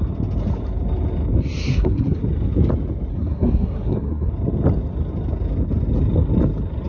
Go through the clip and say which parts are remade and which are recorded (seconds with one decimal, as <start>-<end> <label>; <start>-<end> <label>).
0.0-1.7 recorded; 1.7-2.2 remade; 2.2-3.1 recorded; 3.1-4.3 remade; 4.3-6.9 recorded